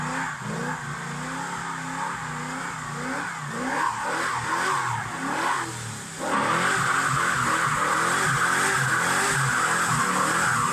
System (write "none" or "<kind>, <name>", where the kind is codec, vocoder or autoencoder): none